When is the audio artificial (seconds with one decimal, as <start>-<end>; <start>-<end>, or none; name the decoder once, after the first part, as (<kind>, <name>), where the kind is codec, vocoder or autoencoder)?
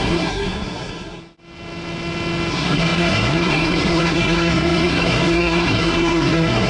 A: 0.0-1.2 (codec, SNAC); 2.5-6.7